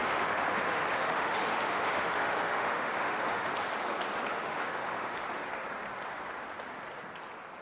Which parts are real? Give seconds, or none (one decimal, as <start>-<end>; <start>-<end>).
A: 3.5-4.3; 5.2-7.6